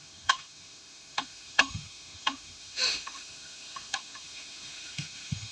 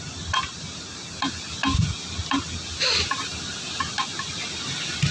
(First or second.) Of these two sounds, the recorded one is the second